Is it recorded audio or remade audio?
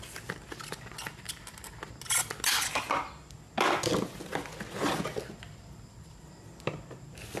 recorded